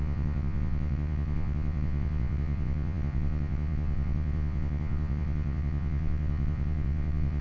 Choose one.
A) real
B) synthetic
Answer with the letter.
B